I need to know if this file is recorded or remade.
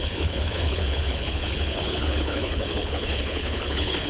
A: remade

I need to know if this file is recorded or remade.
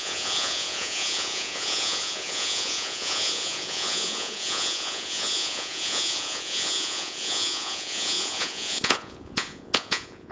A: remade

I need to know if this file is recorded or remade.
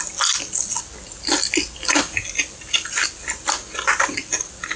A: recorded